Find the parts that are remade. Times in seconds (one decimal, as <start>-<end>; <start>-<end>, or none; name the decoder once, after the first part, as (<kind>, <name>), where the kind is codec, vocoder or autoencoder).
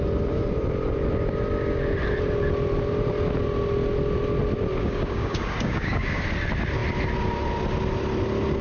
4.8-6.2 (codec, DAC)